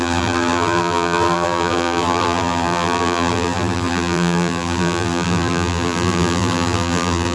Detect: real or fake fake